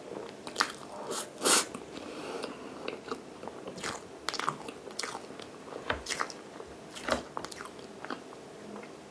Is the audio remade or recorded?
recorded